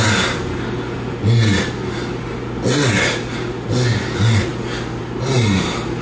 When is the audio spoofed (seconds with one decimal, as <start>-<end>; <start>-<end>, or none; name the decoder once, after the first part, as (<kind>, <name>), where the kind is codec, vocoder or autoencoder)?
none